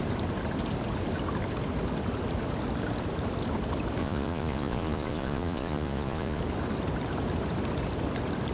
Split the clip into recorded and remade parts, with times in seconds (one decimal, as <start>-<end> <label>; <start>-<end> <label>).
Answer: 0.0-4.0 recorded; 4.0-6.4 remade; 6.4-8.5 recorded